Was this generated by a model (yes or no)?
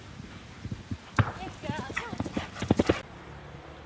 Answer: no